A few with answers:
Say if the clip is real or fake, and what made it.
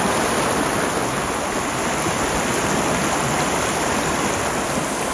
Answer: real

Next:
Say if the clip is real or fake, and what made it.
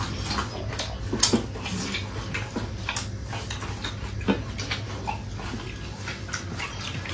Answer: real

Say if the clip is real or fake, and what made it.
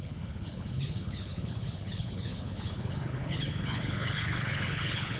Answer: fake, codec, HILCodec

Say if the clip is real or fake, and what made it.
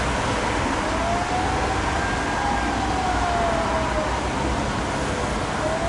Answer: real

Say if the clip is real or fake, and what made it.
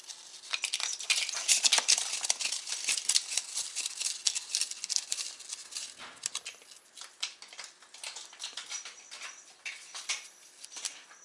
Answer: real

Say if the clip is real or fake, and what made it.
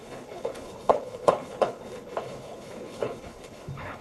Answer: fake, codec, HILCodec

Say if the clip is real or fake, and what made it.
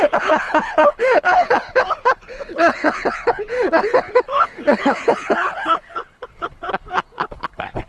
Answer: fake, codec, HILCodec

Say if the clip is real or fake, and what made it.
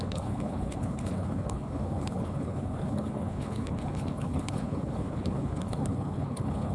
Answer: fake, codec, HILCodec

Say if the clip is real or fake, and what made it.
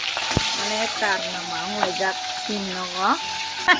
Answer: real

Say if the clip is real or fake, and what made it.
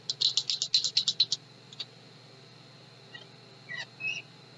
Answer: real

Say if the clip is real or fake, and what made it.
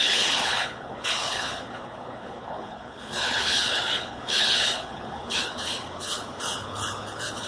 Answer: fake, codec, HILCodec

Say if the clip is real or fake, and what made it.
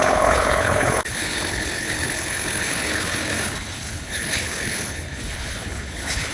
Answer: fake, codec, HILCodec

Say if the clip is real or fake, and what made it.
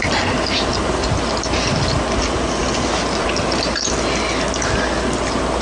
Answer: real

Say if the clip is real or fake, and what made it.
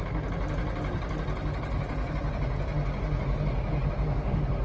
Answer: real